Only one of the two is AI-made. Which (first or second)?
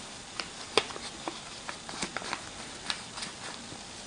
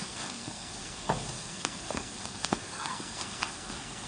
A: second